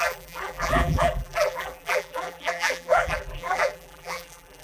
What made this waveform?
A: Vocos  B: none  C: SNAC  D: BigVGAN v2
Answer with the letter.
D